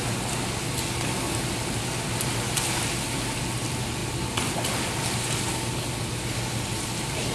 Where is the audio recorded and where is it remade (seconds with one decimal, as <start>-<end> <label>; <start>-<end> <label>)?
0.0-7.3 recorded